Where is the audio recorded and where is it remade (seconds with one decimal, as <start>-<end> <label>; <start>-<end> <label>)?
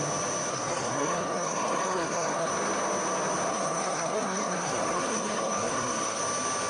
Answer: 0.0-0.5 recorded; 0.5-2.5 remade; 2.5-3.5 recorded; 3.5-6.2 remade; 6.2-6.7 recorded